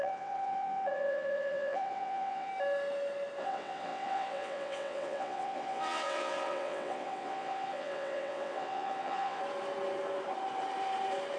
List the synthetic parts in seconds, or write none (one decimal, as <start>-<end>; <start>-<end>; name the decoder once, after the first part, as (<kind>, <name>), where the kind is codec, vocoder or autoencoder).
0.0-2.5 (vocoder, WaveNeXt); 3.4-9.4